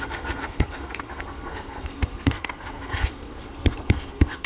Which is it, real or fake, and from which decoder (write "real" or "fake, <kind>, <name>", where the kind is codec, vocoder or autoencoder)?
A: fake, codec, SNAC